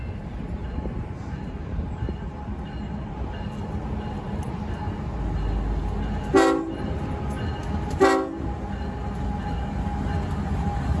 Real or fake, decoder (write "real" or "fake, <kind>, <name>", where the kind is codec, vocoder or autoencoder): real